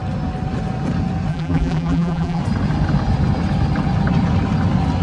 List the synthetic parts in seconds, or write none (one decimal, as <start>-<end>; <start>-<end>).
1.3-2.4

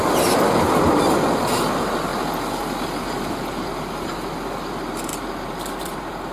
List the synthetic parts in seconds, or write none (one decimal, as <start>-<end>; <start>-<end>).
5.1-6.3

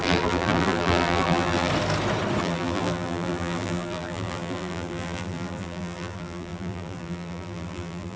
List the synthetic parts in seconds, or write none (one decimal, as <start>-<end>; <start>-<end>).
0.0-1.7; 2.4-8.2

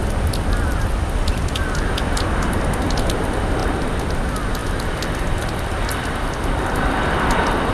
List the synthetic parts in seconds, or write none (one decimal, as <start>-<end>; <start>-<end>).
0.0-3.6; 4.1-7.7

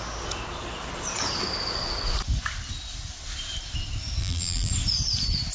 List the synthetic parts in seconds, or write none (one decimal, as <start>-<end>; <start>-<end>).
4.2-4.7

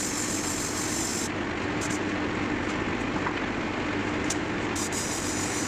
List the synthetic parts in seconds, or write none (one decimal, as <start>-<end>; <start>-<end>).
4.0-5.7

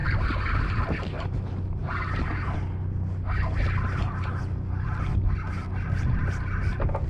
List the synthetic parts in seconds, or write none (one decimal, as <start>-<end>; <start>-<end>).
0.0-0.7